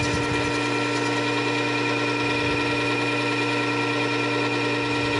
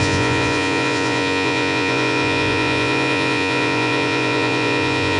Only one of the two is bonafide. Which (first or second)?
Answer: first